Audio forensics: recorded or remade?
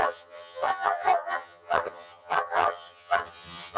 remade